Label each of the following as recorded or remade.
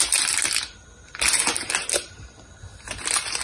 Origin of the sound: recorded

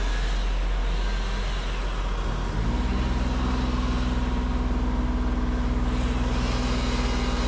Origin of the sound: recorded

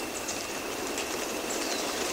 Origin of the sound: recorded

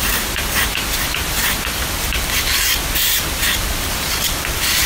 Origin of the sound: remade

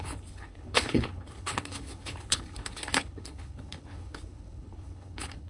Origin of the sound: remade